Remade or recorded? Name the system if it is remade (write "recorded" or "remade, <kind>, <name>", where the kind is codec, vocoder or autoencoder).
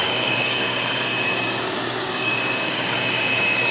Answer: remade, codec, DAC